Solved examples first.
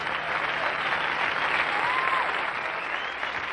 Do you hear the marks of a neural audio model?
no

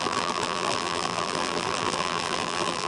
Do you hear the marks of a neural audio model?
yes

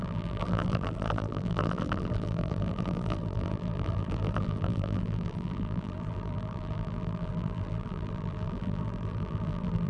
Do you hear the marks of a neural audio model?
yes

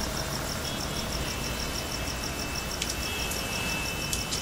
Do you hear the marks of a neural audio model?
no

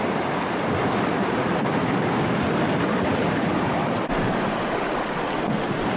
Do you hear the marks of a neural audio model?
no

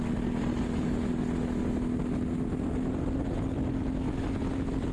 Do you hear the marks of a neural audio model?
no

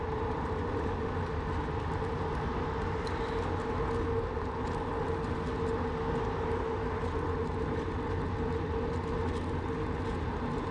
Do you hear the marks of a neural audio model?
no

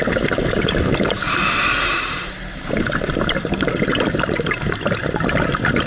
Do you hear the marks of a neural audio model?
no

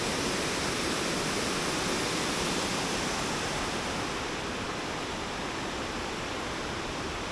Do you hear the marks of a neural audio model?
no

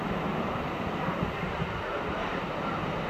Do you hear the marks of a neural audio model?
yes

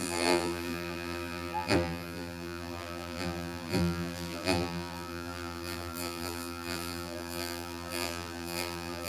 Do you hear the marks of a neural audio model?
yes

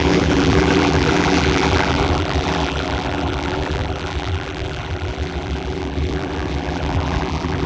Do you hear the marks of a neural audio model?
yes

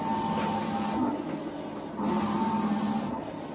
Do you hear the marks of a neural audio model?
no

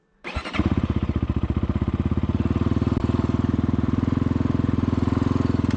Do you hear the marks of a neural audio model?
yes